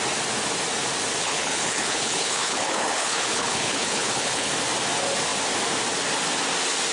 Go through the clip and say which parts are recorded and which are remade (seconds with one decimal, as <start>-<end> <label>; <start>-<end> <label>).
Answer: 0.0-1.2 recorded; 1.2-4.5 remade; 4.5-6.9 recorded